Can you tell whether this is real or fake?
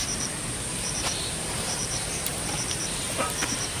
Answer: fake